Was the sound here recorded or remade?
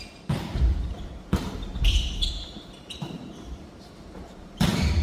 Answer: remade